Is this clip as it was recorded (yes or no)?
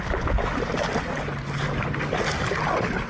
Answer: yes